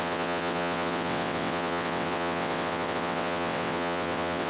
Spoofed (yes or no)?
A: yes